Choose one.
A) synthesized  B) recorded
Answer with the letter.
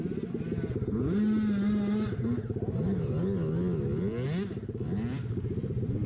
B